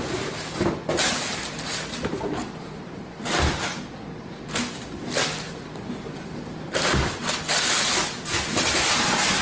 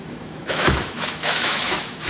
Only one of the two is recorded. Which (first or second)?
first